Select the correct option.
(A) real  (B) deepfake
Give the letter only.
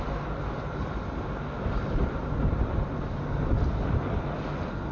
A